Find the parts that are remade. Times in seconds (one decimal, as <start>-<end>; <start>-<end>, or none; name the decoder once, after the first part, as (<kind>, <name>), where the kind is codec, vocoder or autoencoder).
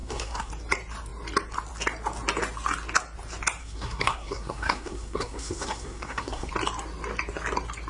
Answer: 0.0-0.5 (codec, SNAC); 3.6-6.5